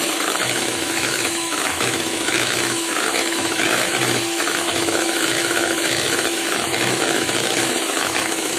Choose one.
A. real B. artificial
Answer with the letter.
B